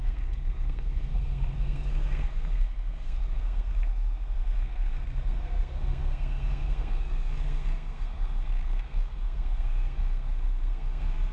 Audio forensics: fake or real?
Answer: fake